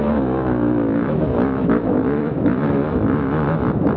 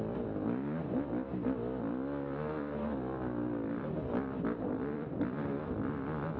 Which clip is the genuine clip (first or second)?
second